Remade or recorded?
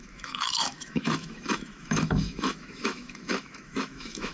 remade